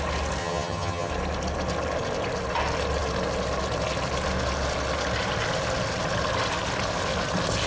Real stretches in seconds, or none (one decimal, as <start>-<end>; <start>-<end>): 0.0-0.4; 1.1-7.7